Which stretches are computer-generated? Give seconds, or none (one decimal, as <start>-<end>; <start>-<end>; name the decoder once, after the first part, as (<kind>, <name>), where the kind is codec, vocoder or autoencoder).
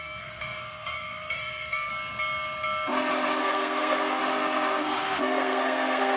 0.0-1.9 (codec, SNAC); 3.4-4.2; 5.0-6.2